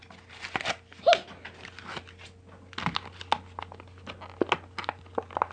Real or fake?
real